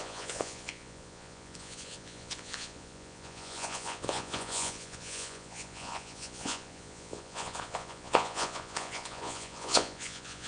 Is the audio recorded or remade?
remade